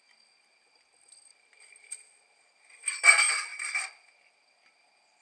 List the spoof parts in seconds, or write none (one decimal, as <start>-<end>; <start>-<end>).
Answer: none